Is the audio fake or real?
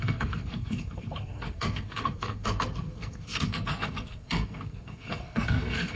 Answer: fake